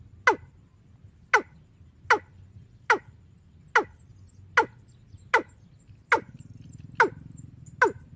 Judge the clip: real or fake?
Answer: real